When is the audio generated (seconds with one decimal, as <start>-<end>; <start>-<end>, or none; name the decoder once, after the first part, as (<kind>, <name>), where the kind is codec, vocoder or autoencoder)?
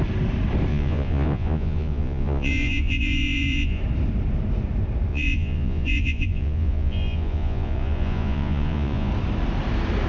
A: 0.7-3.8 (vocoder, Vocos); 5.1-9.1